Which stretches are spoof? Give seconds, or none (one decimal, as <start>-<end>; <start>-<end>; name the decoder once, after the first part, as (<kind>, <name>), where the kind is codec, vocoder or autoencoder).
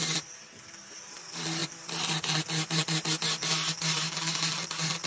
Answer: none